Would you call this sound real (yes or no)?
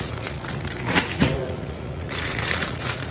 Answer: no